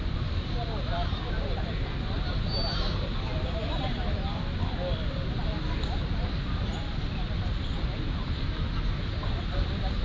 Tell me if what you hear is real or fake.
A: real